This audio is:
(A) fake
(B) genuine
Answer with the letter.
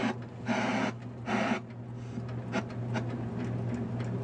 B